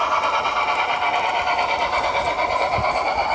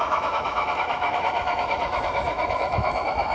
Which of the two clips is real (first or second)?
first